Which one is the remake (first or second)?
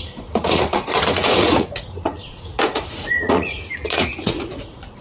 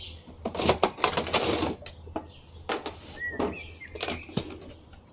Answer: first